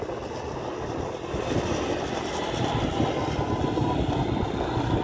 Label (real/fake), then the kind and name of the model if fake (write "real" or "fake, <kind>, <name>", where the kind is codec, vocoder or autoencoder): real